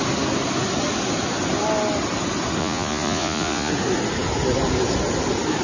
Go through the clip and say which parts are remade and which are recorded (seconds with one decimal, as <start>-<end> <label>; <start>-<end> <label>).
0.0-2.6 recorded; 2.6-3.7 remade; 3.7-5.6 recorded